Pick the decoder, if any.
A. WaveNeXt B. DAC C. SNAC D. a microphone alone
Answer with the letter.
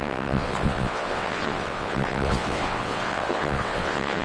A